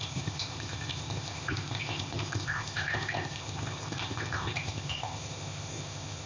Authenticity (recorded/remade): remade